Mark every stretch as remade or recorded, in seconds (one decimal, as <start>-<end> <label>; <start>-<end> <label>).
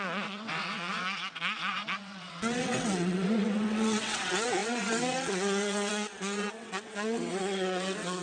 0.0-8.2 remade